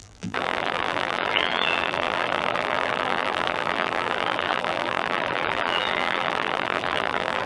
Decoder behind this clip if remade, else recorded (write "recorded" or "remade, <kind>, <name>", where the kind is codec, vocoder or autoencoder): remade, vocoder, BigVGAN v2